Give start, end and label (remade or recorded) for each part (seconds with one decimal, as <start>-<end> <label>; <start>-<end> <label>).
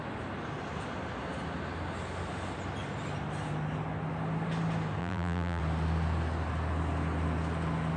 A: 0.0-5.0 recorded; 5.0-5.6 remade; 5.6-8.0 recorded